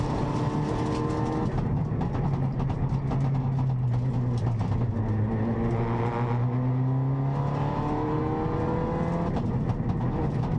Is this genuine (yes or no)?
yes